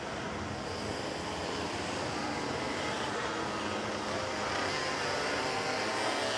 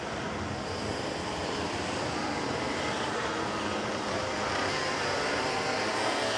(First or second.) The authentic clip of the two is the first